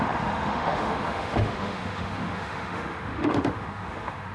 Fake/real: fake